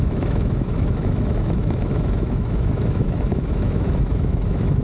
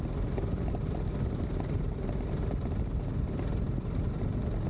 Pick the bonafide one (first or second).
second